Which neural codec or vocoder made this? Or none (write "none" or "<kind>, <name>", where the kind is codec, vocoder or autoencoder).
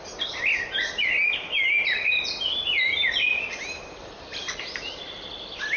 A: none